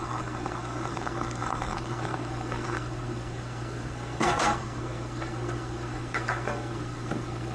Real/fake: fake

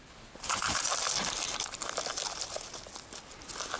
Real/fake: real